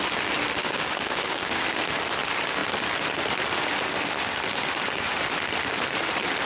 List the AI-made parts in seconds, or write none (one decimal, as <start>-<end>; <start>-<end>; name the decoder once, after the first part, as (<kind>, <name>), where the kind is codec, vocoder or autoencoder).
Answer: 0.6-1.6 (codec, DAC)